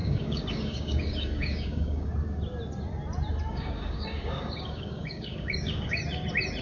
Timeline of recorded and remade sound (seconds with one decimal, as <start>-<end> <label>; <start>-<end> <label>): 0.0-2.1 remade; 2.1-3.5 recorded; 3.5-6.0 remade; 6.0-6.6 recorded